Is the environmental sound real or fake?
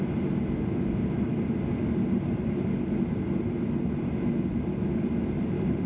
real